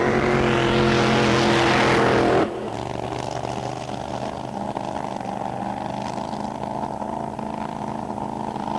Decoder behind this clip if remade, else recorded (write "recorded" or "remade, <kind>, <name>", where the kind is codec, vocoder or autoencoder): recorded